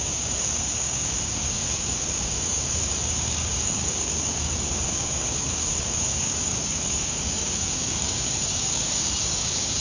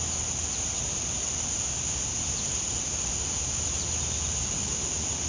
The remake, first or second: first